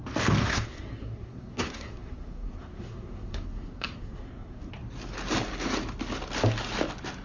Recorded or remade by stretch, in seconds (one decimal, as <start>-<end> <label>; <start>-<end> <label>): 0.0-0.4 recorded; 0.4-4.7 remade; 4.7-7.2 recorded

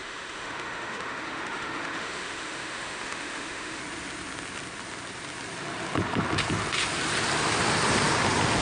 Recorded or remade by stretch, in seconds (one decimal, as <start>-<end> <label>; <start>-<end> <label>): 0.0-3.8 remade; 3.8-8.6 recorded

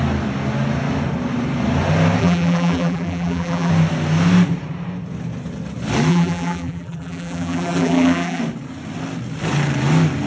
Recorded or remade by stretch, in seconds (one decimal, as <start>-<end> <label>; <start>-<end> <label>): 0.0-2.2 recorded; 2.2-3.7 remade; 3.7-6.1 recorded; 6.1-8.4 remade; 8.4-10.3 recorded

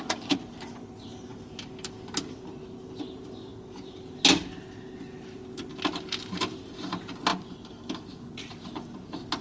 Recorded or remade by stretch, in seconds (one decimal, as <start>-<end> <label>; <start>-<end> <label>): 0.0-9.4 recorded

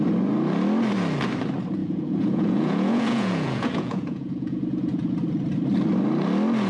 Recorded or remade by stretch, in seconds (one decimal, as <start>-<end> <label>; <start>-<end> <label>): 0.0-1.8 recorded; 1.8-5.1 remade; 5.1-6.7 recorded